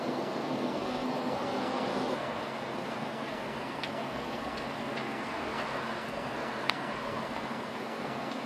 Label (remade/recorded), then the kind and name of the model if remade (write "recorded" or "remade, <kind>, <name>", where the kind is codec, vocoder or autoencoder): remade, codec, SNAC